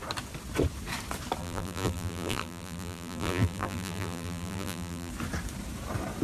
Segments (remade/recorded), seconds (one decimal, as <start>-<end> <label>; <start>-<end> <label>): 0.0-1.4 recorded; 1.4-5.1 remade; 5.1-6.2 recorded